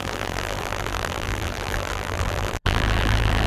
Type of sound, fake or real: fake